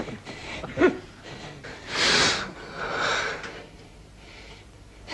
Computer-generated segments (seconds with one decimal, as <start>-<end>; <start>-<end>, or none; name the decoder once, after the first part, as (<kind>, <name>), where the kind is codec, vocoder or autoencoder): none